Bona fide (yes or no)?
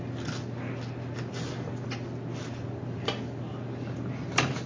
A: yes